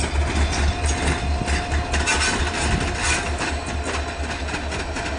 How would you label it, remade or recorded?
recorded